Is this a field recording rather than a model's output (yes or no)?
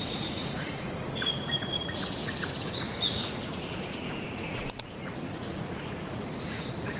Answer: no